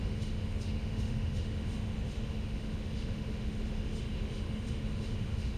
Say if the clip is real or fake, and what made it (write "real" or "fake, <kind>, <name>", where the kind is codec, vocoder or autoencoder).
fake, autoencoder, DAC-VAE